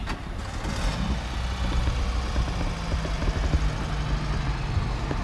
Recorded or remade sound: recorded